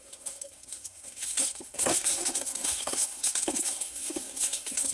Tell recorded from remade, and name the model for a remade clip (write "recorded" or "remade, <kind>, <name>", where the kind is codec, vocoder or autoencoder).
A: remade, codec, SNAC